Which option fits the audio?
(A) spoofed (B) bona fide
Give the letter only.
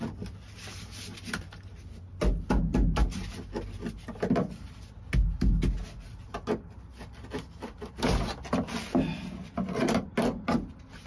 B